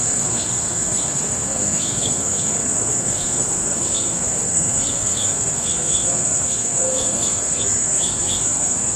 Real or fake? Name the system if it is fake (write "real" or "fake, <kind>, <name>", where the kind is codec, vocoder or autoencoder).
fake, codec, SNAC